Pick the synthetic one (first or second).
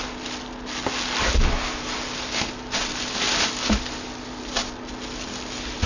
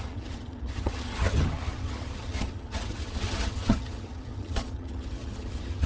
second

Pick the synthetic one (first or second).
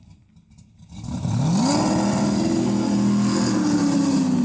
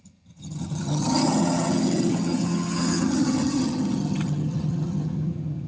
second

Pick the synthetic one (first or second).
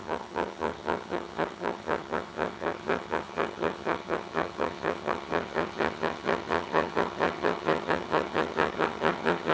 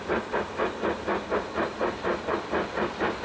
first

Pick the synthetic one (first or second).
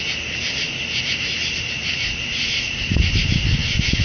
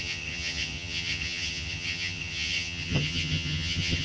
second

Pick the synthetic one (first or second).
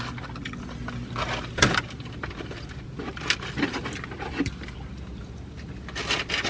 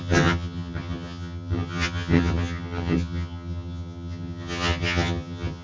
second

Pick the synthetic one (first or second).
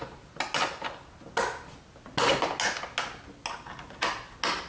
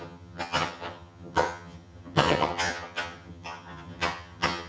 second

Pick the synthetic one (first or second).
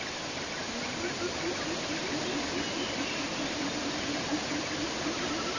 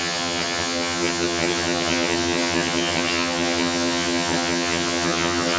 second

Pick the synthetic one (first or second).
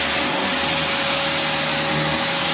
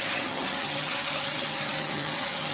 second